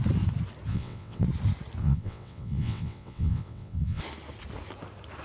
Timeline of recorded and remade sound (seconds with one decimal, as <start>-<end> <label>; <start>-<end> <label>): 0.0-0.7 recorded; 0.7-1.2 remade; 1.2-1.8 recorded; 1.8-4.0 remade; 4.0-5.2 recorded